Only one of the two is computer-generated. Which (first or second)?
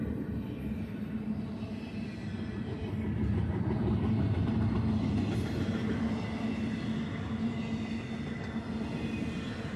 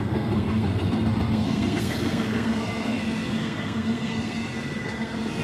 second